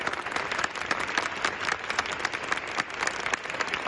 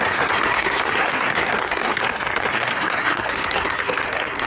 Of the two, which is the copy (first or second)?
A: second